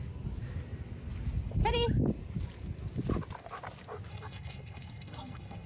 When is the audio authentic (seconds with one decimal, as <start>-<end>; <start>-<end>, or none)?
0.0-4.1